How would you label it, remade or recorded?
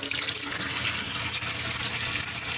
recorded